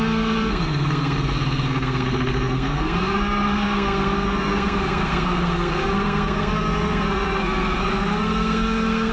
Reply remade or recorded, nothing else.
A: remade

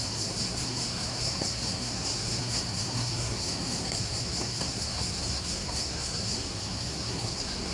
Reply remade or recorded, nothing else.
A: remade